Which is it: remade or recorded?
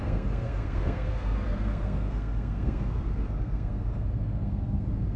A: remade